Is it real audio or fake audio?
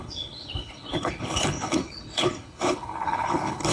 fake